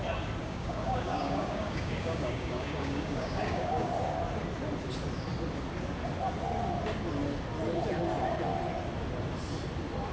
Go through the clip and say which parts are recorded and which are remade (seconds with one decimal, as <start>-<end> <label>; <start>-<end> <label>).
0.0-0.4 recorded; 0.4-3.9 remade; 3.9-10.1 recorded

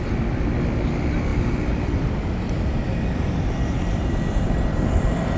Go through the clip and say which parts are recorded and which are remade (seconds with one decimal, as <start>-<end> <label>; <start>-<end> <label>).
0.0-5.4 recorded

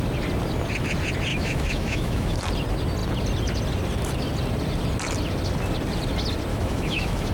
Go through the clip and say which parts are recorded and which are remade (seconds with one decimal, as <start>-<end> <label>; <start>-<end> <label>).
0.0-1.3 recorded; 1.3-2.4 remade; 2.4-6.5 recorded; 6.5-7.3 remade

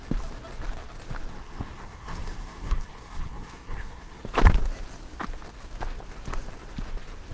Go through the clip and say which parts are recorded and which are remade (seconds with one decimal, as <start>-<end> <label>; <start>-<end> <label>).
0.0-1.3 recorded; 1.3-4.2 remade; 4.2-7.3 recorded

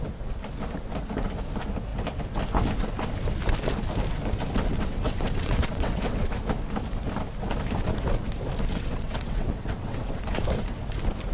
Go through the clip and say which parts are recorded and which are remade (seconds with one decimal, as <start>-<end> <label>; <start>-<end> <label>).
0.0-4.7 recorded; 4.7-6.4 remade; 6.4-8.7 recorded; 8.7-10.2 remade; 10.2-11.3 recorded

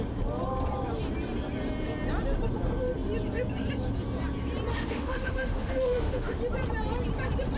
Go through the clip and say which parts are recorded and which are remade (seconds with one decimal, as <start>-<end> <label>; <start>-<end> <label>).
0.0-4.7 recorded; 4.7-6.4 remade; 6.4-7.6 recorded